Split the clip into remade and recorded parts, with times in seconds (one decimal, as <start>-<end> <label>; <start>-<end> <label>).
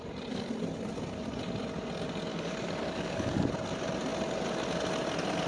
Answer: 0.0-2.3 recorded; 2.3-3.5 remade; 3.5-5.5 recorded